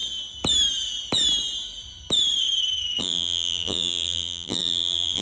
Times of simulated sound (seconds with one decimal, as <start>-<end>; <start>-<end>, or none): 3.0-5.2